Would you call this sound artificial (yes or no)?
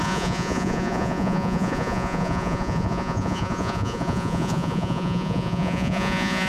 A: yes